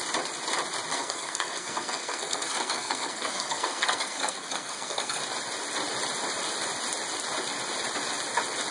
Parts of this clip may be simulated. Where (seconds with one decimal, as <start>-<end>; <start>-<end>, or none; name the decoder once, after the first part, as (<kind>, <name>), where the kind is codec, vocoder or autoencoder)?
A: 0.9-5.2 (codec, SNAC)